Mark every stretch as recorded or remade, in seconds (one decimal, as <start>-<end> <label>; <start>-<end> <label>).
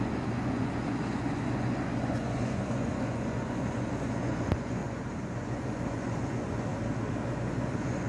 0.0-6.7 remade; 6.7-7.3 recorded; 7.3-8.1 remade